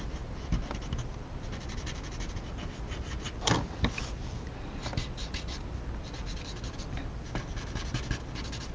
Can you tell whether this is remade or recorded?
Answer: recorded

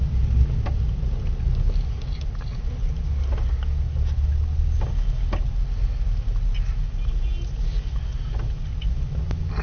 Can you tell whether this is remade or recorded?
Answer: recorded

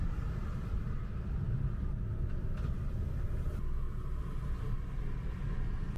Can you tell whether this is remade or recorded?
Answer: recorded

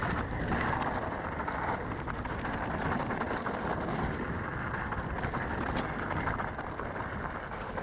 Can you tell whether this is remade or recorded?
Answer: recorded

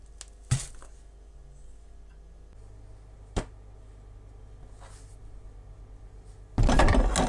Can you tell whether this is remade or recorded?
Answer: recorded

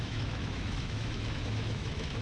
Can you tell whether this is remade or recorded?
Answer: remade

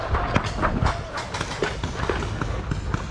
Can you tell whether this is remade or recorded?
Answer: recorded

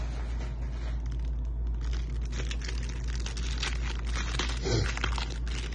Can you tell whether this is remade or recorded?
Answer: recorded